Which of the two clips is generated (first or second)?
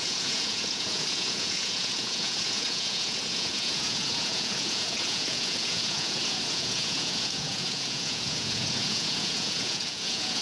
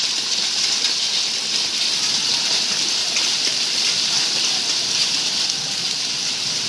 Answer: first